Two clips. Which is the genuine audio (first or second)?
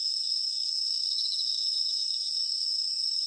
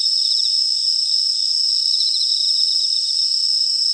second